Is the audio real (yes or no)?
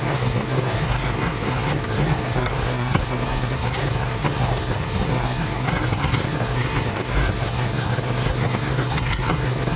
no